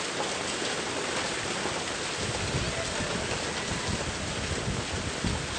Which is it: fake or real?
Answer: real